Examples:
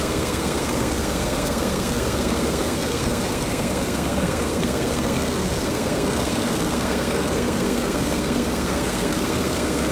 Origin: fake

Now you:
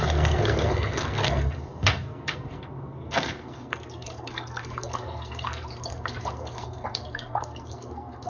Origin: fake